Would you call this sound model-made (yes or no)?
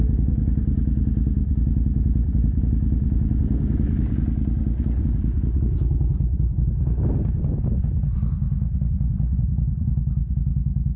no